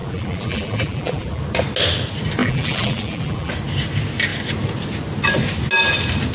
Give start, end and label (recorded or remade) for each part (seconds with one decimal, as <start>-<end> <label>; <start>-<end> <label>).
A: 0.0-1.4 remade; 1.4-2.4 recorded; 2.4-3.5 remade; 3.5-6.3 recorded